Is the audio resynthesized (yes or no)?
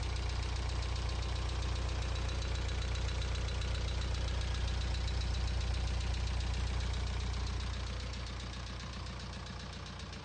no